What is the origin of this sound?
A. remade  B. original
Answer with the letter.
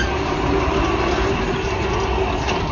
B